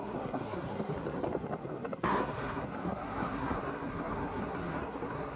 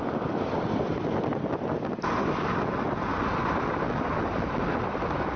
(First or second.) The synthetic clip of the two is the first